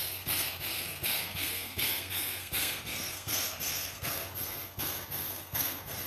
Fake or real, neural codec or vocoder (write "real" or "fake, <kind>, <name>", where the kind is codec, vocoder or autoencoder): fake, codec, SNAC